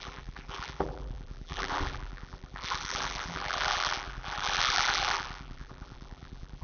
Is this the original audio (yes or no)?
no